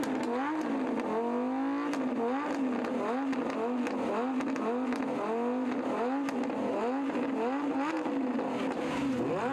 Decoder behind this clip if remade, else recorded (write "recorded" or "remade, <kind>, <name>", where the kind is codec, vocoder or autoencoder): recorded